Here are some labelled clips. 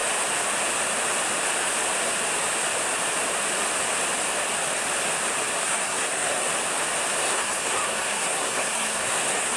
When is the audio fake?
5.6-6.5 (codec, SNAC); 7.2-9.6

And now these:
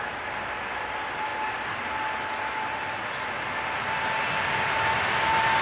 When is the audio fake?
none

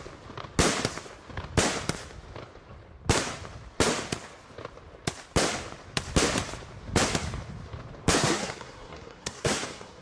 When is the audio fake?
8.2-10.0 (codec, SNAC)

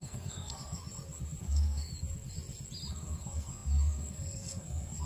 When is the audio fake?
0.0-0.8 (codec, SNAC); 1.4-1.9; 2.9-5.1

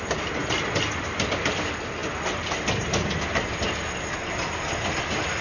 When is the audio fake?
none